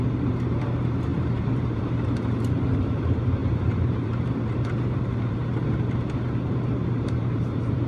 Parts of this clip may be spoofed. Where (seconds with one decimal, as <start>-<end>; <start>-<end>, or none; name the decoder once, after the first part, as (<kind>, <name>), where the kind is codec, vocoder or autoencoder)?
0.0-7.9 (vocoder, BigVGAN v2)